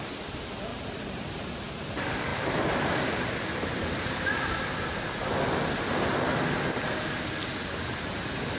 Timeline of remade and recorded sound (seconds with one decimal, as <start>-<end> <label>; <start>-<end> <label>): 0.0-0.7 recorded; 0.7-1.6 remade; 1.6-2.3 recorded; 2.3-5.3 remade; 5.3-7.5 recorded; 7.5-8.1 remade; 8.1-8.6 recorded